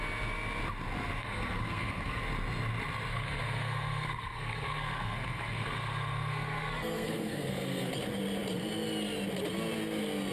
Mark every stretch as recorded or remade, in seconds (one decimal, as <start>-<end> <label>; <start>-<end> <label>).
0.0-1.2 recorded; 1.2-2.2 remade; 2.2-3.1 recorded; 3.1-7.9 remade; 7.9-10.3 recorded